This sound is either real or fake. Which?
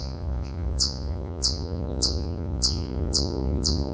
fake